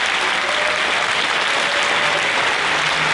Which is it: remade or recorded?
recorded